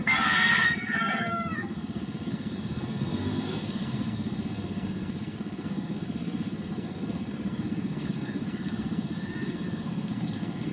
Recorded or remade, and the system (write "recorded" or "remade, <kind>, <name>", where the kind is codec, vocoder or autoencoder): remade, codec, SNAC